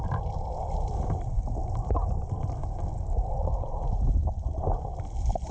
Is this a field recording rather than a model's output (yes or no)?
yes